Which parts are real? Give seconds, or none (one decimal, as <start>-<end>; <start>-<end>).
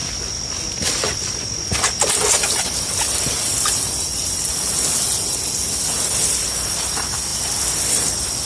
0.0-8.5